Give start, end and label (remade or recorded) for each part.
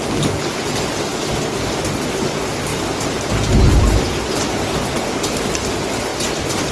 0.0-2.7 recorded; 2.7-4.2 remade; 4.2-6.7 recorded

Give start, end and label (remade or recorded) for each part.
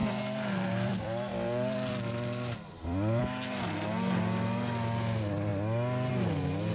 0.0-3.2 remade; 3.2-6.7 recorded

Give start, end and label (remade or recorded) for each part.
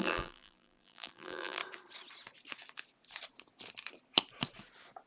0.0-1.6 remade; 1.6-5.1 recorded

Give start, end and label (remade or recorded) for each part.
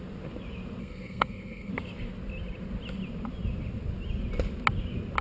0.0-0.8 recorded; 0.8-1.7 remade; 1.7-5.2 recorded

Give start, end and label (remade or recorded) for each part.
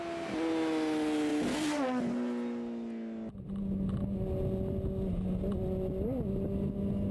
0.0-7.1 recorded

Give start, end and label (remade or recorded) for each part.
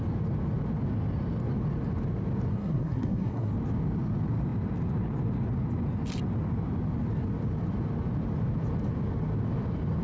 0.0-2.5 recorded; 2.5-3.5 remade; 3.5-10.0 recorded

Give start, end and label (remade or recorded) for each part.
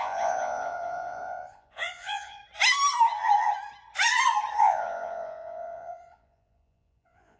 0.0-2.4 remade; 2.4-4.6 recorded; 4.6-7.4 remade